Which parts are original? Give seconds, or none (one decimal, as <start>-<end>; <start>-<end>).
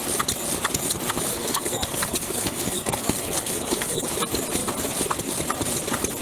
0.0-1.3; 4.1-6.2